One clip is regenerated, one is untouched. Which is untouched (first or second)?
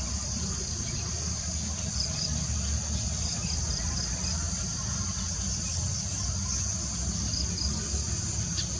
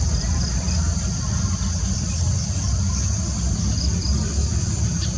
first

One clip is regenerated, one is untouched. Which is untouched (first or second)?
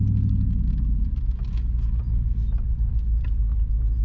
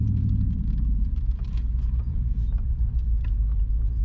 first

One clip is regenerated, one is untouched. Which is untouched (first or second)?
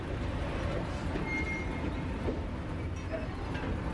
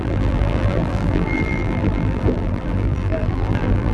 first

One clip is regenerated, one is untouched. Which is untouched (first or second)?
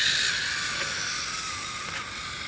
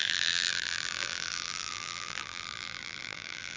first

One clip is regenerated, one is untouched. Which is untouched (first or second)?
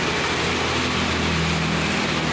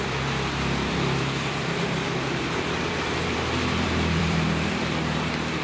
first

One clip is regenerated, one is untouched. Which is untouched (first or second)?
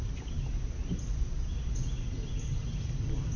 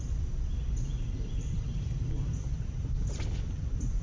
first